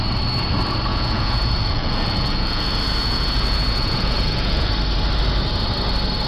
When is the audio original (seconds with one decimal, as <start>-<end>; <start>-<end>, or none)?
0.0-0.9; 4.7-6.3